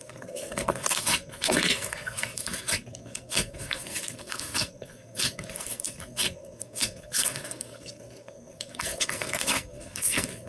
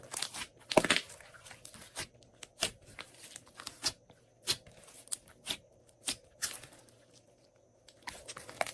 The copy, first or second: first